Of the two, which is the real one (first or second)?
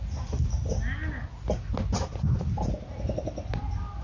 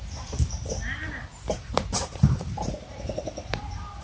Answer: first